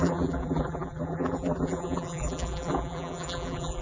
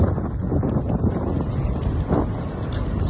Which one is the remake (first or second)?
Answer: first